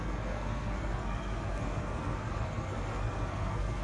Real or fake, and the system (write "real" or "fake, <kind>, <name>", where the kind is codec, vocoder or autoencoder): fake, codec, SNAC